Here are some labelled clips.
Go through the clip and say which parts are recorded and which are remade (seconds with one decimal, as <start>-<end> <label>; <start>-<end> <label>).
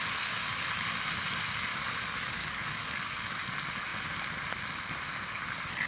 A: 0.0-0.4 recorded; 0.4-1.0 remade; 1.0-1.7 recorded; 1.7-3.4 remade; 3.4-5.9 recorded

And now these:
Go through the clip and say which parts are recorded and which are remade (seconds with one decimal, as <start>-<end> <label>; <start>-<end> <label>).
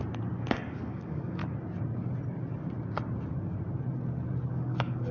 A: 0.0-0.5 recorded; 0.5-1.4 remade; 1.4-4.5 recorded; 4.5-5.1 remade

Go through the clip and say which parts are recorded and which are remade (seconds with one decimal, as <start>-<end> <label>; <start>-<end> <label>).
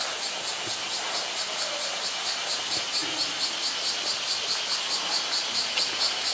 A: 0.0-6.3 recorded